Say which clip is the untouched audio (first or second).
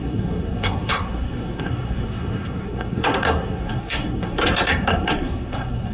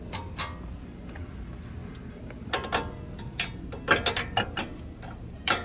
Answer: second